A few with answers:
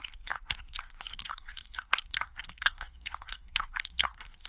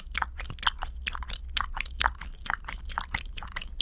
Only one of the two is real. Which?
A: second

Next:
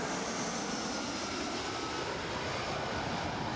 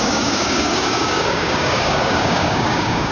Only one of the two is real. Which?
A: first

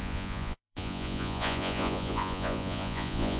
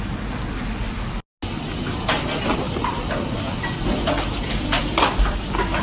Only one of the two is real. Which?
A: second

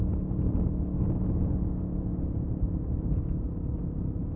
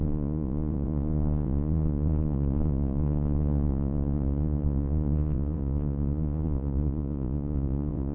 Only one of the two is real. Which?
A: first